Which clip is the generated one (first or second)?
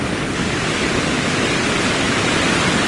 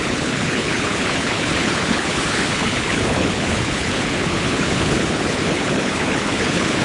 second